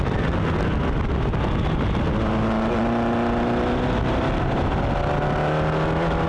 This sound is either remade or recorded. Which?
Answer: recorded